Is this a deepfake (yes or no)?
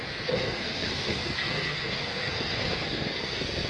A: yes